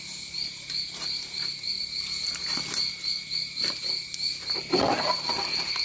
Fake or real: fake